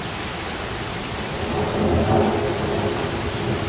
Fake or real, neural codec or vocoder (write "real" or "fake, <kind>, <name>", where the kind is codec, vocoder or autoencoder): real